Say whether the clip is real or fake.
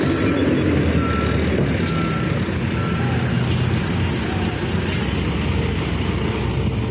real